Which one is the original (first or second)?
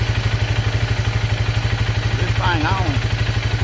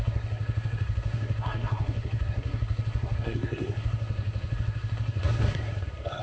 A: first